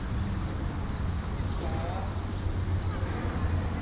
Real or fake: real